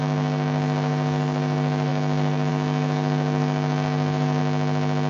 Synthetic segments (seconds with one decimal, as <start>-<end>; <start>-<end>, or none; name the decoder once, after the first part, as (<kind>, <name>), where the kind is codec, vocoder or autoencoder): 0.0-4.4 (codec, DAC)